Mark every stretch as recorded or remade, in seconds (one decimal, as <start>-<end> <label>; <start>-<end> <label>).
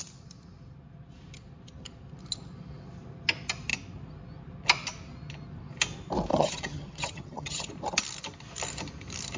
0.0-6.3 recorded; 6.3-7.7 remade; 7.7-9.4 recorded